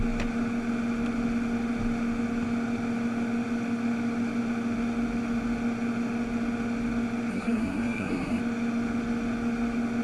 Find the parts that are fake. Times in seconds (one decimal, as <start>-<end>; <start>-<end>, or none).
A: 7.3-8.4